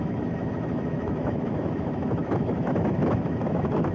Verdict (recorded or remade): remade